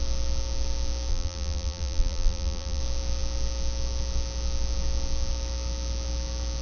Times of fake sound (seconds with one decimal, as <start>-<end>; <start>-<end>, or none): 1.1-2.8